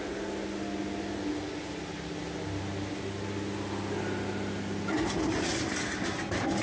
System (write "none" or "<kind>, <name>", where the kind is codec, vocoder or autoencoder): none